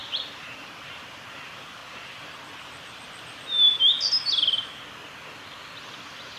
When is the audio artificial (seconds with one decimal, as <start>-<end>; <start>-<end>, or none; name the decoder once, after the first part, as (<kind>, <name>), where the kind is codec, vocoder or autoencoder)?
0.0-0.9 (vocoder, BigVGAN v2)